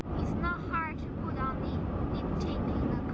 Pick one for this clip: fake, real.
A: real